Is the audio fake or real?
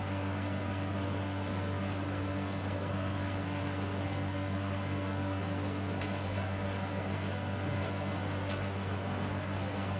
fake